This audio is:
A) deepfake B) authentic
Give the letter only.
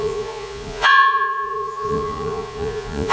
A